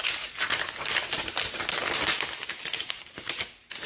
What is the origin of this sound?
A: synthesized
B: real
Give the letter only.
B